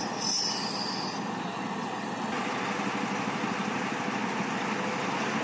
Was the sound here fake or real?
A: real